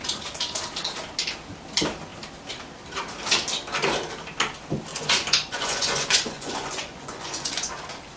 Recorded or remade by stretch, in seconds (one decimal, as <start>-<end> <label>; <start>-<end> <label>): 0.0-4.9 recorded; 4.9-7.7 remade; 7.7-8.2 recorded